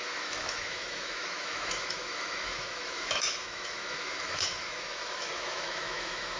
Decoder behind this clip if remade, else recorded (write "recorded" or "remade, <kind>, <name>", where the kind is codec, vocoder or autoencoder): remade, autoencoder, DAC-VAE